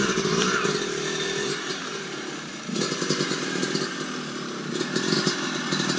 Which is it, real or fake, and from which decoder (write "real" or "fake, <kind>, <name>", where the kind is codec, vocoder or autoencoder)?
fake, vocoder, BigVGAN v2